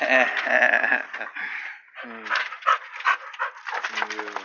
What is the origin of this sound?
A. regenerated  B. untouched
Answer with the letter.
B